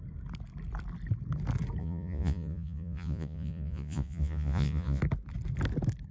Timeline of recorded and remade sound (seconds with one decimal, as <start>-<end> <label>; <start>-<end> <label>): 0.0-1.8 recorded; 1.8-5.0 remade; 5.0-6.1 recorded

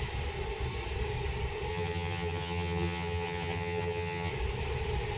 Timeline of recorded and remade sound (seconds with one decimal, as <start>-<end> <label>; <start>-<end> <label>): 0.0-1.7 recorded; 1.7-4.3 remade; 4.3-5.2 recorded

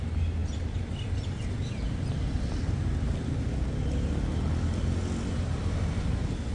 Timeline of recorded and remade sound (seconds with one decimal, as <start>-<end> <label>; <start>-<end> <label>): 0.0-6.5 recorded